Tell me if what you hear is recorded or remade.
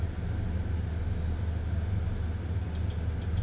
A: recorded